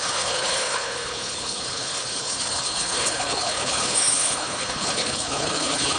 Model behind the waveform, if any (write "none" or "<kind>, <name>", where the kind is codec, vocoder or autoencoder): codec, HILCodec